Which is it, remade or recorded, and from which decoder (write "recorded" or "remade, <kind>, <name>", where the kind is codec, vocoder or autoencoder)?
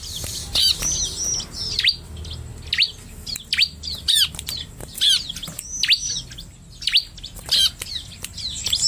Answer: recorded